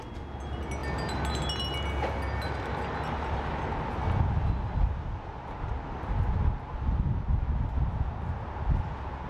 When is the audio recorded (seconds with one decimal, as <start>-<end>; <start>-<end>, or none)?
0.0-9.3

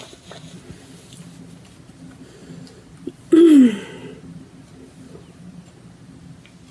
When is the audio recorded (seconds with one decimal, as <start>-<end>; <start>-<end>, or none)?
0.0-6.7

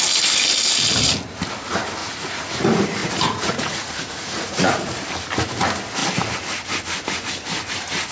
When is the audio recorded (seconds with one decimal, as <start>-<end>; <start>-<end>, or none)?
0.0-2.0; 2.5-3.0; 4.9-8.1

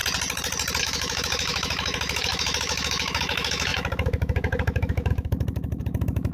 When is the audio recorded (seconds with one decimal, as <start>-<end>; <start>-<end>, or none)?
0.0-0.8